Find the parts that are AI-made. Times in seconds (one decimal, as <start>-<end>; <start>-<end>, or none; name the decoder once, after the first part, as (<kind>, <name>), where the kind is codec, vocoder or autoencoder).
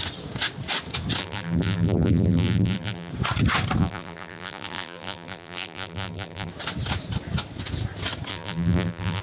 1.2-3.1 (vocoder, BigVGAN v2); 3.8-6.5; 8.3-9.2